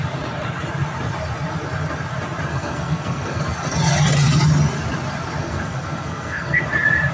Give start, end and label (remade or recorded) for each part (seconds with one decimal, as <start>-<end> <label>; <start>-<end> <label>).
0.0-2.5 recorded; 2.5-3.4 remade; 3.4-5.4 recorded; 5.4-6.6 remade; 6.6-7.1 recorded